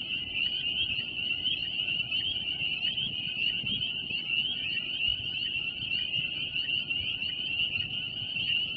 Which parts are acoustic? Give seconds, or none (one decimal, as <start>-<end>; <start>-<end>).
0.0-8.8